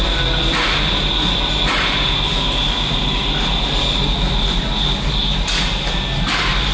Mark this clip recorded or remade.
recorded